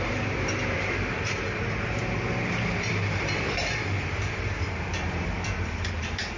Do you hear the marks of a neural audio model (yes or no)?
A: yes